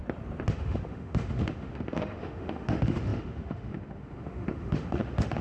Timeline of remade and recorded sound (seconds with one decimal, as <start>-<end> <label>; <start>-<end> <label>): 0.0-0.5 recorded; 0.5-5.4 remade